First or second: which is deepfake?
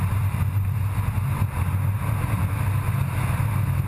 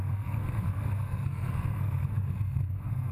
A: second